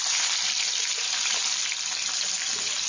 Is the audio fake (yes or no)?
no